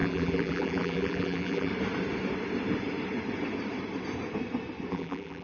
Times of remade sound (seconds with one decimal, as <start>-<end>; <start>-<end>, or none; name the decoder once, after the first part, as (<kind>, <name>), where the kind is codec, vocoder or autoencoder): 0.0-1.7 (vocoder, BigVGAN v2); 4.9-5.4